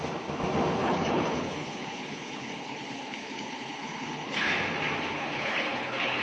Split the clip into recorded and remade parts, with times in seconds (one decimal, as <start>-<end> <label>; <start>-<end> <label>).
0.0-0.8 recorded; 0.8-4.5 remade; 4.5-5.1 recorded; 5.1-6.2 remade